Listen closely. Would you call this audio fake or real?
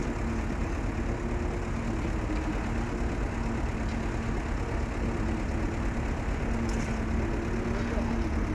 real